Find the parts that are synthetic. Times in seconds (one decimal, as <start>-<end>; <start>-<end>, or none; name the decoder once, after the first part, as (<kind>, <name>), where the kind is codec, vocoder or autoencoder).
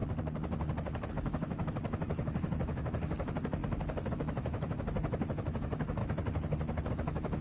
1.1-3.6 (autoencoder, DAC-VAE); 4.1-6.0; 6.9-7.4